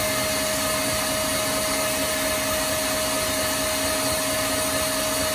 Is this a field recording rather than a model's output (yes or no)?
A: yes